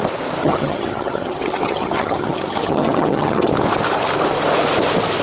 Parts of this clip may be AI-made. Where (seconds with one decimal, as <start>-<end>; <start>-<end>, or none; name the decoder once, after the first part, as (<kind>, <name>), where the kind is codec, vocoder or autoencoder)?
0.4-3.5 (vocoder, HiFi-GAN)